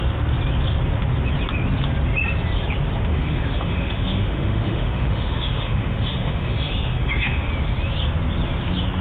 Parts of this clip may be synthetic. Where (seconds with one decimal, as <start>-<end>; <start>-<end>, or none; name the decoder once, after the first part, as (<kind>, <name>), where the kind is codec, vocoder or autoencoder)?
3.1-7.5 (autoencoder, DAC-VAE)